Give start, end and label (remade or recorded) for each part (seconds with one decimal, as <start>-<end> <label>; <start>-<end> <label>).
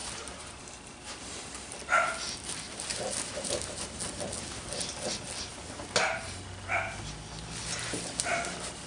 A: 0.0-1.2 remade; 1.2-2.9 recorded; 2.9-3.9 remade; 3.9-5.5 recorded; 5.5-6.1 remade; 6.1-8.9 recorded